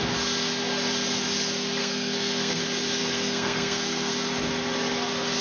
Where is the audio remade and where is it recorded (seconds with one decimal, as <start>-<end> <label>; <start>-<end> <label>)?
0.0-1.8 recorded; 1.8-2.6 remade; 2.6-3.0 recorded; 3.0-4.1 remade; 4.1-5.4 recorded